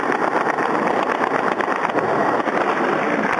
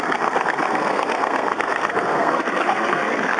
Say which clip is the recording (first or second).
first